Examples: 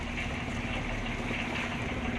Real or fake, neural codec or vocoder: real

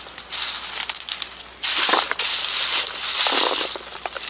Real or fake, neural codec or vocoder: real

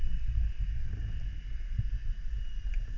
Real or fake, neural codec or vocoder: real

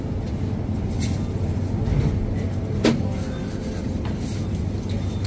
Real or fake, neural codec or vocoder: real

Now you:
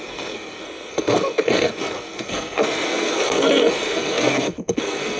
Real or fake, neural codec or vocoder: fake, codec, SNAC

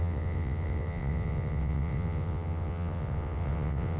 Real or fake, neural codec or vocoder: fake, vocoder, WaveNeXt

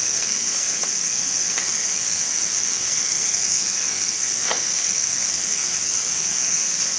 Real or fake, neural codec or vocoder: fake, codec, SNAC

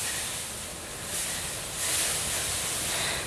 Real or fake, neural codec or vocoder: real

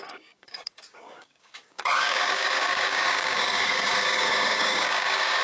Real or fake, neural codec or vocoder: fake, codec, DAC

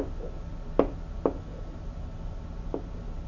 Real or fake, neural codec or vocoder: real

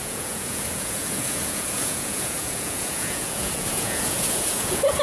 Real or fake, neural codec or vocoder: fake, vocoder, Vocos